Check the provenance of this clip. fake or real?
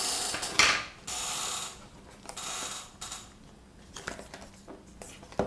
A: real